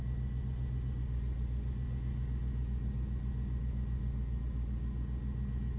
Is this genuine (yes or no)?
yes